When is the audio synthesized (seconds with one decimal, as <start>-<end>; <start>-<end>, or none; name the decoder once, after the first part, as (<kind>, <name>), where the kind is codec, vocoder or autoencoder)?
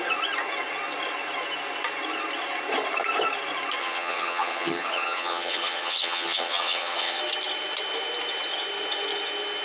3.8-7.2 (vocoder, HiFi-GAN)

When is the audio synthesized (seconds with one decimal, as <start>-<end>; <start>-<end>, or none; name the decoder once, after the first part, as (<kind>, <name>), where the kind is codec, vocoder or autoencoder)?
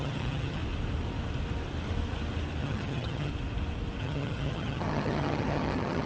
0.0-0.6 (vocoder, HiFi-GAN); 2.6-3.3; 4.0-6.1